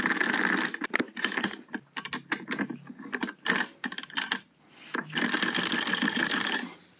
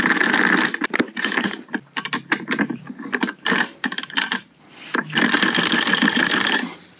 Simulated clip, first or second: second